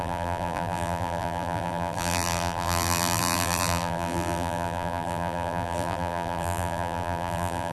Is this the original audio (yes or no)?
no